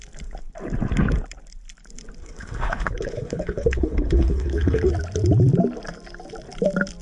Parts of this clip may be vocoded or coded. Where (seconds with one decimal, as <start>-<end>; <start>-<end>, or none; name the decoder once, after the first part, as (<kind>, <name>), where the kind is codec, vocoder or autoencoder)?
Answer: 2.2-4.9 (codec, HILCodec)